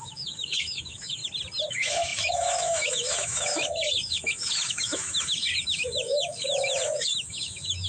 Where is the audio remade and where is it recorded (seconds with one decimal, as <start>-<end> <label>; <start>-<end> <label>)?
0.0-1.2 remade; 1.2-1.7 recorded; 1.7-7.9 remade